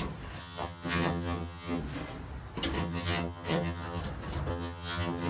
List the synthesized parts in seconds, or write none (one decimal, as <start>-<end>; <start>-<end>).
0.4-1.8; 2.8-4.0; 4.5-5.3